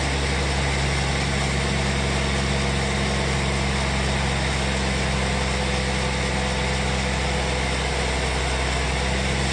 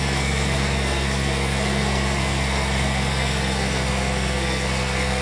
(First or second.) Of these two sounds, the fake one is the second